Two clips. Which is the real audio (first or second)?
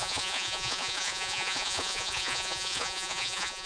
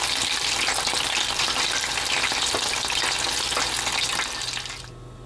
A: second